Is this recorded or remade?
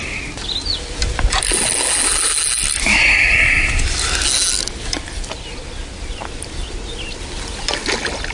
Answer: recorded